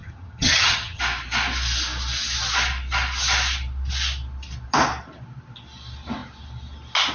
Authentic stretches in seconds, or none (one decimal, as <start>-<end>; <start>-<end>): 1.0-7.1